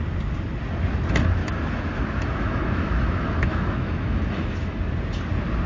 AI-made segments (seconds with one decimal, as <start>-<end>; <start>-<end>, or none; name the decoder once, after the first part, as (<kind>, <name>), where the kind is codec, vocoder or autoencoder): 1.4-4.8 (autoencoder, DAC-VAE)